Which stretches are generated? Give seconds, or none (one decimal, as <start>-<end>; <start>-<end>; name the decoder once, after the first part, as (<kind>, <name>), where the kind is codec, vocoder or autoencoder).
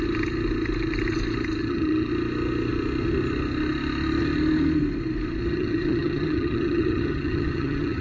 1.6-2.1 (vocoder, HiFi-GAN); 5.5-8.0